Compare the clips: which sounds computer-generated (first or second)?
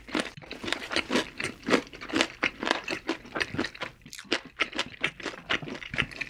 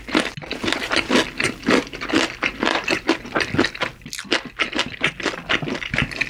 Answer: first